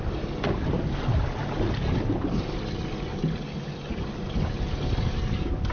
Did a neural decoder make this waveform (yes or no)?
no